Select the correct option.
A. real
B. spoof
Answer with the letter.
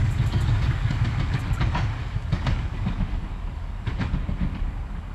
B